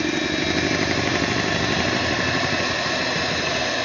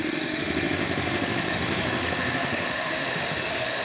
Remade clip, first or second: second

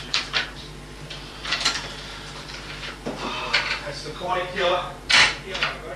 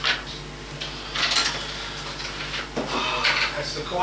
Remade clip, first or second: first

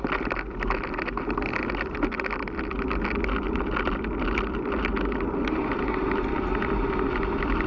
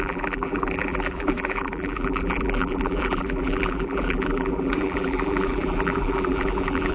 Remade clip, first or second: second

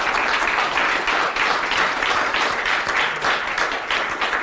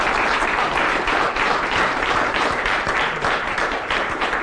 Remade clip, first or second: second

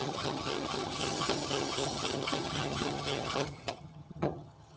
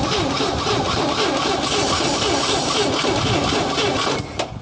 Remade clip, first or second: first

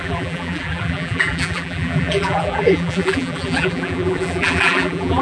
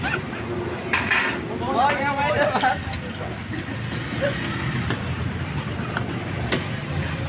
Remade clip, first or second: first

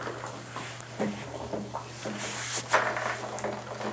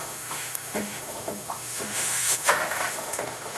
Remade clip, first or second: second